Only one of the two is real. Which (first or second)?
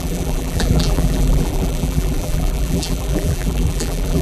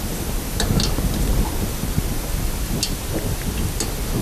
second